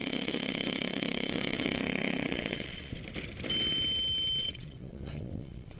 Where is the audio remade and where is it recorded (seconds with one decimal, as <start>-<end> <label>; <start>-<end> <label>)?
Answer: 0.0-2.9 remade; 2.9-4.4 recorded; 4.4-5.8 remade